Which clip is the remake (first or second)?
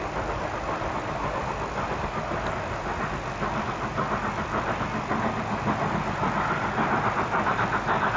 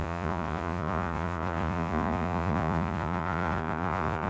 second